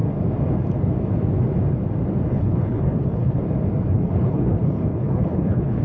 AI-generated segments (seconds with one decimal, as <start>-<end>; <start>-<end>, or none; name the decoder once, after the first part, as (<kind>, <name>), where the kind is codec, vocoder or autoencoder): 2.3-3.4 (codec, HILCodec); 3.9-5.8